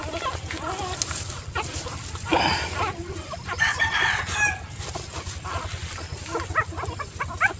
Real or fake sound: real